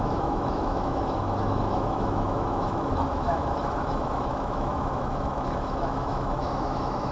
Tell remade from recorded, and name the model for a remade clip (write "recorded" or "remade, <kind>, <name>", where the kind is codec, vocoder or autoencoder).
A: remade, autoencoder, DAC-VAE